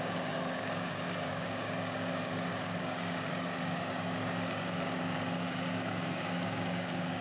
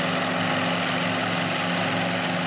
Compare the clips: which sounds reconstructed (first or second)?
first